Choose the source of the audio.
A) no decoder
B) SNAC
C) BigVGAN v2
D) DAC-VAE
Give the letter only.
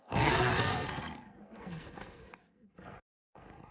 B